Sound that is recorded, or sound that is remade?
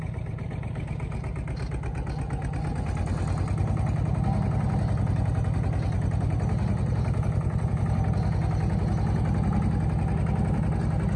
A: recorded